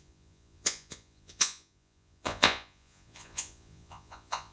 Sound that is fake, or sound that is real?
fake